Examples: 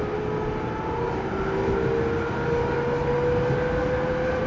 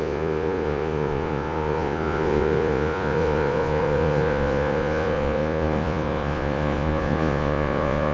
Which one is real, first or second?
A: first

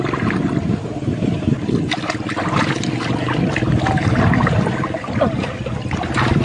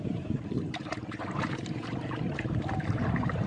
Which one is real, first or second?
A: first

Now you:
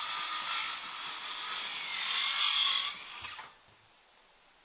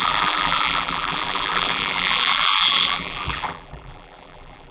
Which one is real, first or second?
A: first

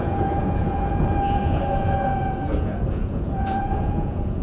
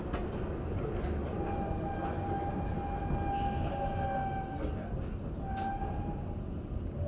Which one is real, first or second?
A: second